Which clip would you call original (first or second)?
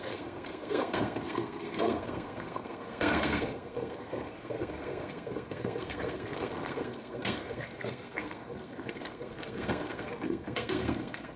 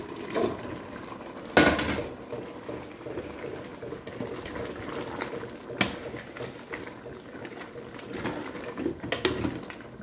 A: second